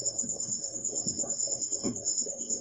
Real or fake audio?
fake